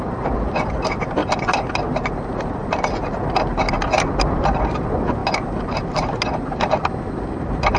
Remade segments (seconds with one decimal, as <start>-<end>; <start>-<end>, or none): none